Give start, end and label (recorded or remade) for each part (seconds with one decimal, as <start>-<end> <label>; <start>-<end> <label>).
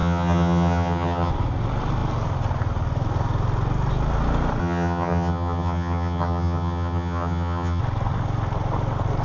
0.0-1.3 remade; 1.3-4.6 recorded; 4.6-7.8 remade; 7.8-9.2 recorded